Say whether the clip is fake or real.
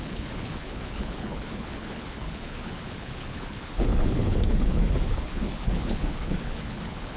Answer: fake